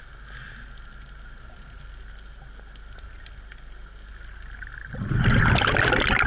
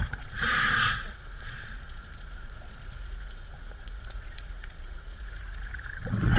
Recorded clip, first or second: first